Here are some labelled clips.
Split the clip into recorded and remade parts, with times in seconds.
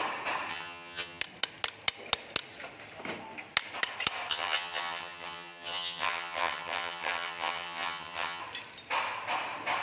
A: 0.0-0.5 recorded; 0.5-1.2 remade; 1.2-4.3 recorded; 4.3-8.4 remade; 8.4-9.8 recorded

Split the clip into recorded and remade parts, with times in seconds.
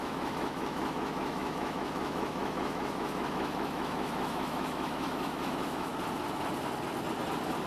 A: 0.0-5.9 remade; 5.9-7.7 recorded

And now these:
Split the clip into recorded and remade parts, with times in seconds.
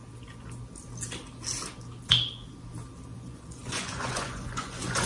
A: 0.0-3.1 recorded; 3.1-5.1 remade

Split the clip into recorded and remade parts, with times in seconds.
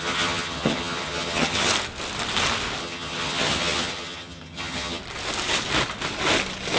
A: 0.0-1.7 remade; 1.7-2.8 recorded; 2.8-5.0 remade; 5.0-6.8 recorded